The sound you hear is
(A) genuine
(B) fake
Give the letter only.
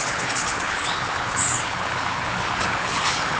B